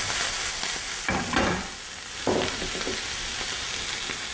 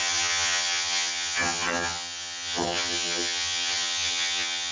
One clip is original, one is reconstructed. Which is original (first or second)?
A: first